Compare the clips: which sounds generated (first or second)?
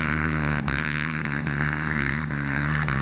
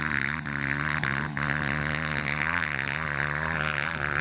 first